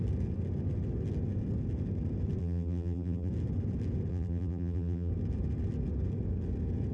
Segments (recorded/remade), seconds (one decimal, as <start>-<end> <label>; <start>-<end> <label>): 0.0-2.4 recorded; 2.4-3.3 remade; 3.3-4.1 recorded; 4.1-5.1 remade; 5.1-6.9 recorded